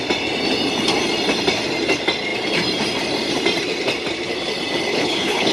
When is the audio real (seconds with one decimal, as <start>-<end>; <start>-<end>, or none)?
0.0-4.9